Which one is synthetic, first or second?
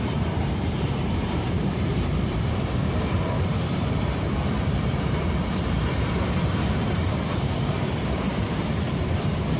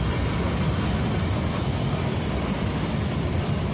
first